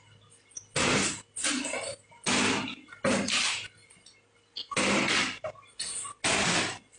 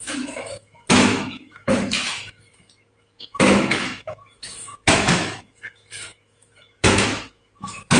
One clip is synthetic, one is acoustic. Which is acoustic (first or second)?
first